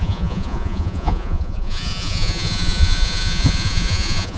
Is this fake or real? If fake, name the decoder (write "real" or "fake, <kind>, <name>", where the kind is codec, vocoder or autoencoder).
fake, vocoder, Vocos